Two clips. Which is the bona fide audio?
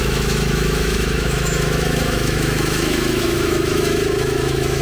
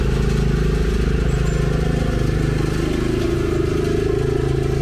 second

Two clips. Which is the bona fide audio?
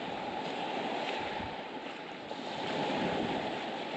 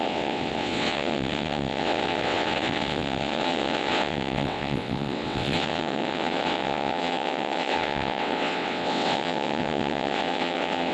first